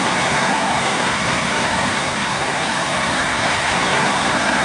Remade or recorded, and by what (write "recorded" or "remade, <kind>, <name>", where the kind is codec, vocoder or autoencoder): remade, codec, SNAC